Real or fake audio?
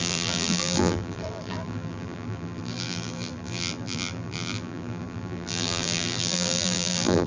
fake